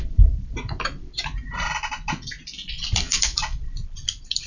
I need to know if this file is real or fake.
fake